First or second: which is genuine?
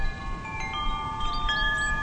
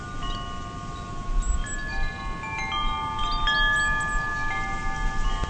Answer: second